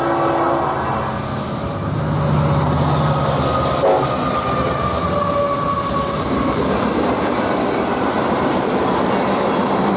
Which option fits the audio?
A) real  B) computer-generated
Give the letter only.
A